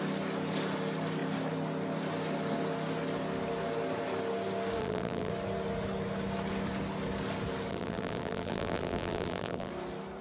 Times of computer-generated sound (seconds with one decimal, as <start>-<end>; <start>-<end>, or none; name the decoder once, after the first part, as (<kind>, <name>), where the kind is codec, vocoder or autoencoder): 4.8-5.3 (vocoder, BigVGAN v2); 7.7-9.7